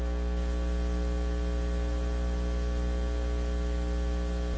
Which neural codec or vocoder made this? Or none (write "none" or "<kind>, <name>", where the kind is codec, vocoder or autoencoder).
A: none